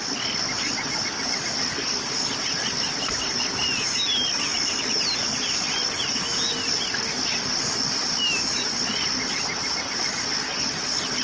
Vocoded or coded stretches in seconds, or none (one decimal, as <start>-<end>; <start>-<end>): none